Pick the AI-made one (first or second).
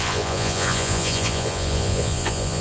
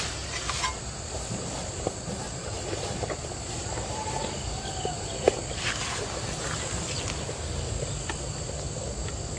first